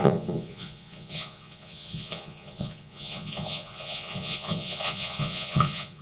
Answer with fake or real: fake